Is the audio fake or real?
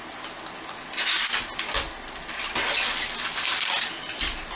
real